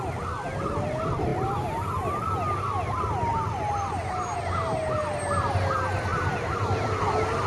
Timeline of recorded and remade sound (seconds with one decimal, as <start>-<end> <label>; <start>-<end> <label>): 0.0-7.5 recorded